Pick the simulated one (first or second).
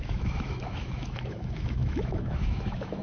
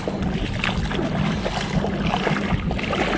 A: first